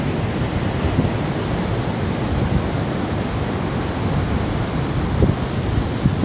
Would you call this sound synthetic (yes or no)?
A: no